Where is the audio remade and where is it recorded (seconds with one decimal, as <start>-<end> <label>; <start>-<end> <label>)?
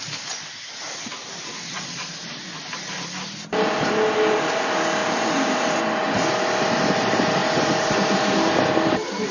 0.0-5.0 recorded; 5.0-5.8 remade; 5.8-9.3 recorded